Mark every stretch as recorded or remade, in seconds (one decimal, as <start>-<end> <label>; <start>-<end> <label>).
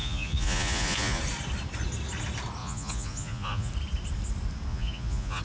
0.0-1.2 remade; 1.2-2.6 recorded; 2.6-3.7 remade; 3.7-4.7 recorded; 4.7-5.4 remade